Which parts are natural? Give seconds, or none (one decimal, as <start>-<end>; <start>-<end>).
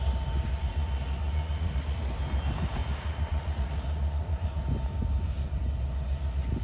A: 0.0-0.5; 2.0-2.8; 4.6-6.6